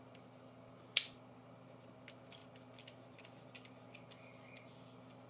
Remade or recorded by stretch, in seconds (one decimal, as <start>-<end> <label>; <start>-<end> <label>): 0.0-5.3 recorded

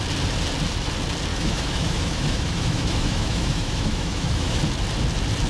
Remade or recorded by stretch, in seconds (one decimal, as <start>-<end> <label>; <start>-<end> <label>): 0.0-1.3 recorded; 1.3-4.6 remade; 4.6-5.5 recorded

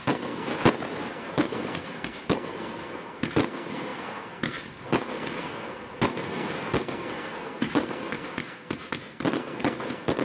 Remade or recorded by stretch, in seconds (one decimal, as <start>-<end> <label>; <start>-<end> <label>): 0.0-0.5 remade; 0.5-1.1 recorded; 1.1-10.2 remade

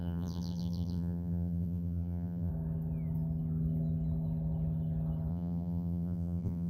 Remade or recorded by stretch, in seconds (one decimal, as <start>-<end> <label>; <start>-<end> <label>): 0.0-2.5 remade; 2.5-5.3 recorded; 5.3-6.7 remade

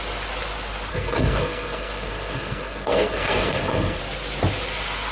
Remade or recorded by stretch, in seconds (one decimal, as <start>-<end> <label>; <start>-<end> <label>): 0.0-0.9 recorded; 0.9-4.0 remade; 4.0-5.1 recorded

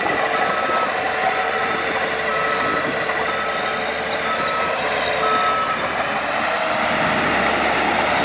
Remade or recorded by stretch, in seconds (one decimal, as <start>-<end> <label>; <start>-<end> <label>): 0.0-1.2 recorded; 1.2-1.7 remade; 1.7-8.2 recorded

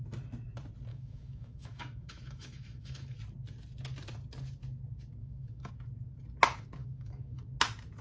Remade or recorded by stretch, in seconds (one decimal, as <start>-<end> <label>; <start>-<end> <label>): 0.0-0.9 recorded; 0.9-3.2 remade; 3.2-5.2 recorded; 5.2-5.7 remade; 5.7-6.8 recorded; 6.8-7.4 remade; 7.4-8.0 recorded